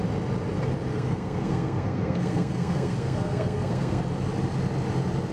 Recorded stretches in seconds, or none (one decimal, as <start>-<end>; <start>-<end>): 0.0-0.9; 4.0-5.3